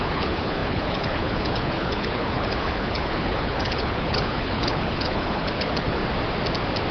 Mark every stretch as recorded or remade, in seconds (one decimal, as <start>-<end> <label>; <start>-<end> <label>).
0.0-6.0 remade; 6.0-6.9 recorded